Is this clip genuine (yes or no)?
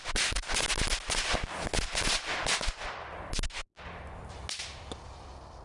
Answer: yes